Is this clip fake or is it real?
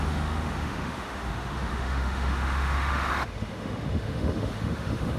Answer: fake